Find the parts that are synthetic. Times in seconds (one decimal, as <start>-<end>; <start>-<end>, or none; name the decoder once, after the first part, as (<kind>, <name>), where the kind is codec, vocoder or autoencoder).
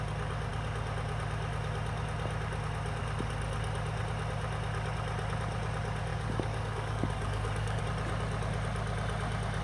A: 6.1-7.8 (codec, DAC)